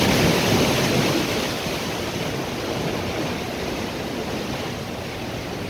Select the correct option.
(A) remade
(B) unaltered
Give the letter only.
B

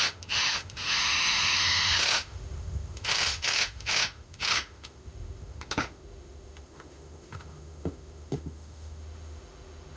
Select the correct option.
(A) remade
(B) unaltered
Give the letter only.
A